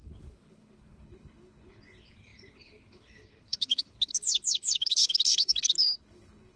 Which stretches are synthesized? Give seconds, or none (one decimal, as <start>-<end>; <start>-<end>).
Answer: 0.0-6.6